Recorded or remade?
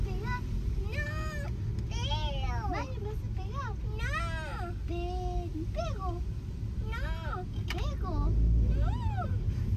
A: recorded